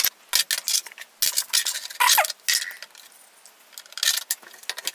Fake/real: real